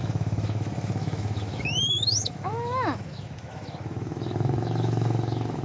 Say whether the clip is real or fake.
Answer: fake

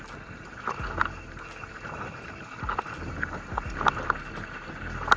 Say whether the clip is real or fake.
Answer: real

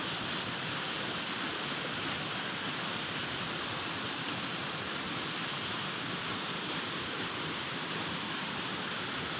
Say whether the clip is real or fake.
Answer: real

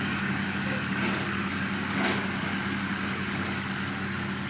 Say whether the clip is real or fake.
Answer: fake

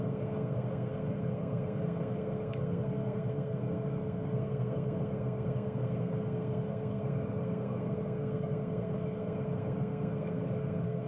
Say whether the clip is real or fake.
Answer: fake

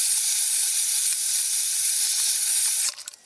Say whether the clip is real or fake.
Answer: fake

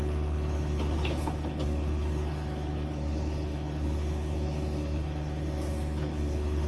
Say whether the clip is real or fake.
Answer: fake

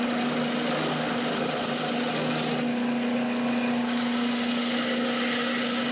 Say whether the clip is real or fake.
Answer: real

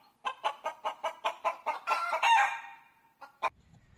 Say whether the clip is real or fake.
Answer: fake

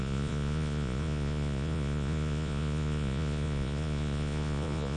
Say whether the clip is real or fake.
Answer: fake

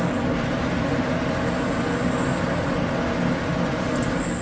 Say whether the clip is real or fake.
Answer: real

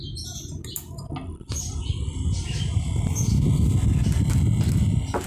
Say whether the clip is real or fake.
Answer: real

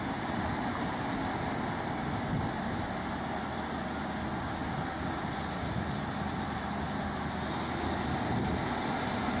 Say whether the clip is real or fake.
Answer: real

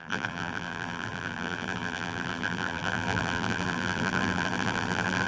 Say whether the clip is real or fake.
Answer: fake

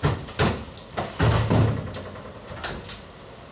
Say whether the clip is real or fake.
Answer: real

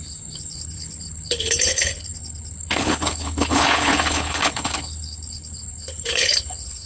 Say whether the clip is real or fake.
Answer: fake